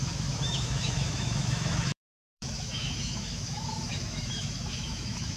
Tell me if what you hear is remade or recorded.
remade